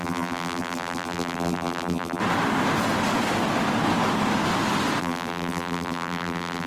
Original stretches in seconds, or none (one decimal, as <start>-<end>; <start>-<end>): 2.2-5.0